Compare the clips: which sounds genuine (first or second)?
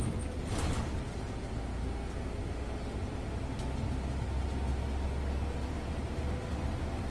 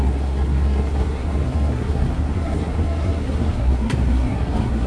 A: first